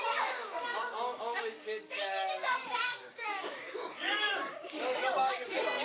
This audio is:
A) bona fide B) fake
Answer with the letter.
B